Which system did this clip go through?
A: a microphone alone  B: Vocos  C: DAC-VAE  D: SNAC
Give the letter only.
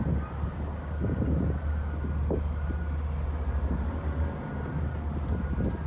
A